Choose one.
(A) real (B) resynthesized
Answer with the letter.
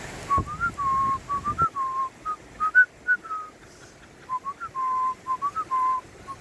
A